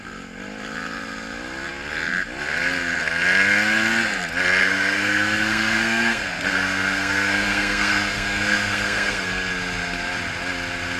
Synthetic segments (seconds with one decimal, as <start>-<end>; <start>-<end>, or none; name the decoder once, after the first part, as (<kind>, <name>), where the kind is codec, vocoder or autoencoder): 4.6-9.5 (codec, SNAC)